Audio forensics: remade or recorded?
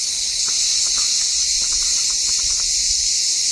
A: recorded